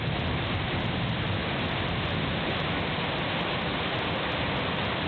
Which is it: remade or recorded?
recorded